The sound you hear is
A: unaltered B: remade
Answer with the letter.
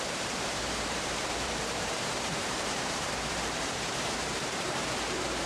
B